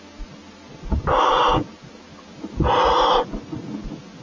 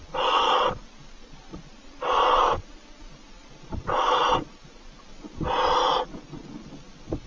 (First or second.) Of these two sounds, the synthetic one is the second